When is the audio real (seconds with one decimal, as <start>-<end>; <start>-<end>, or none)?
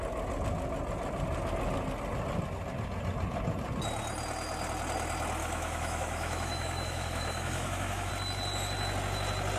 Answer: 0.0-5.4; 8.1-9.6